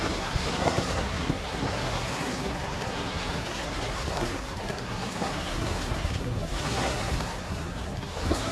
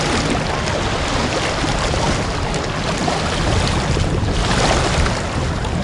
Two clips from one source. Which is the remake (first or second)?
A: first